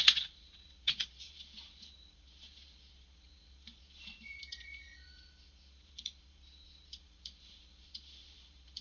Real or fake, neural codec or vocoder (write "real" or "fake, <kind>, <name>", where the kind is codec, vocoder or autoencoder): fake, vocoder, Vocos